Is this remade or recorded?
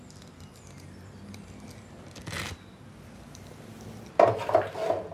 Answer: recorded